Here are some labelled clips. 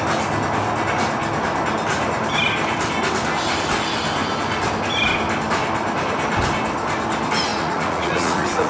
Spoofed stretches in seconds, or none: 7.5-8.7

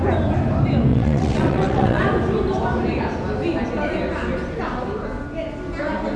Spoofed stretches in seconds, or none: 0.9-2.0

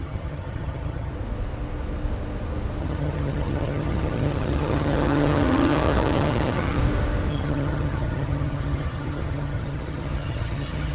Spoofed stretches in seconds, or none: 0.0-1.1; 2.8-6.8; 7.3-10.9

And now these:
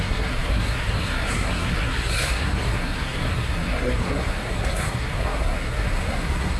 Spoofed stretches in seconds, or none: 0.0-6.6

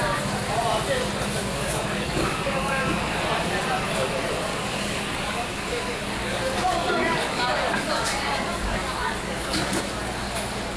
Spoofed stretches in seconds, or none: 1.4-3.2; 4.5-9.8

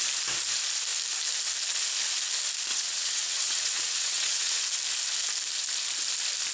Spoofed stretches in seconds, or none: 2.7-4.6

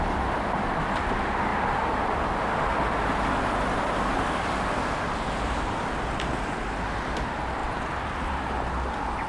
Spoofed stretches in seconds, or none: none